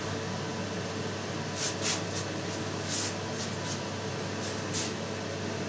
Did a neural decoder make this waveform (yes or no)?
no